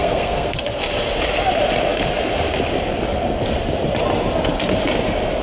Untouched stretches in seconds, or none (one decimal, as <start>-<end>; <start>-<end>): 0.6-5.4